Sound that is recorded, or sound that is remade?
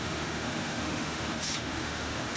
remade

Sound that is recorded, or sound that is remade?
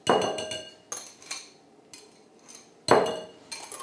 recorded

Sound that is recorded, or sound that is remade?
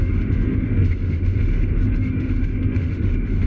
remade